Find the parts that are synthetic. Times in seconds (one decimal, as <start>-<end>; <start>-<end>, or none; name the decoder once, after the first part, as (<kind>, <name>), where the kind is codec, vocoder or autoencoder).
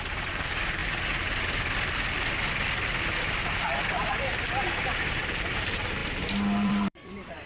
0.0-0.8 (vocoder, BigVGAN v2); 4.2-7.5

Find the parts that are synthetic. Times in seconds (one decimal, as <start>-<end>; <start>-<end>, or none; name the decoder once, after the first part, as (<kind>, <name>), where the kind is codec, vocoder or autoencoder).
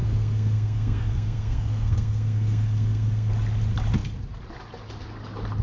0.0-3.3 (codec, SNAC)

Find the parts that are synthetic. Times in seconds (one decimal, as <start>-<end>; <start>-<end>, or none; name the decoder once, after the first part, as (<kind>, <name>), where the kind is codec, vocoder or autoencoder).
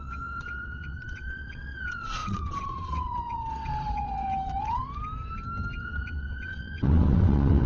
0.0-4.8 (vocoder, WaveNeXt); 5.8-7.7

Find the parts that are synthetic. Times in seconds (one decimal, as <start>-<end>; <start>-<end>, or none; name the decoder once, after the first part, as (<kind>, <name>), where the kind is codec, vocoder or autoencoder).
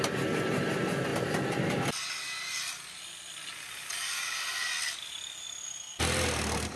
none